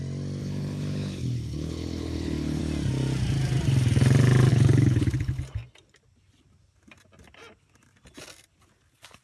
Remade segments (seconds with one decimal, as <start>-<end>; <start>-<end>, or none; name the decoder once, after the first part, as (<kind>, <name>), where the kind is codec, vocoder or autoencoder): 0.4-2.6 (codec, HILCodec); 4.5-5.4